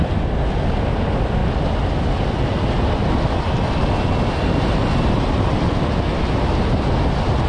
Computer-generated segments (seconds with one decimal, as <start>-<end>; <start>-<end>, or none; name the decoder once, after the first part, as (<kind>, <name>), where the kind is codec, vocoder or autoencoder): none